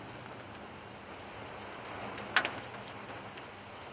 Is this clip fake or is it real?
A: real